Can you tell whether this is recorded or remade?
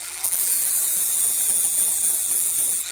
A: remade